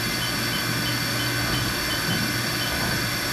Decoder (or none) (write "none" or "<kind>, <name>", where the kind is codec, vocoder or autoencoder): none